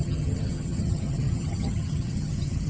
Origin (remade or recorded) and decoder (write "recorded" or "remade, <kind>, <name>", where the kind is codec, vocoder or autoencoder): remade, vocoder, HiFi-GAN